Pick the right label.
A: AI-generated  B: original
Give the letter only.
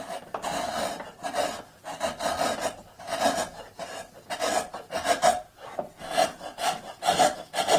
B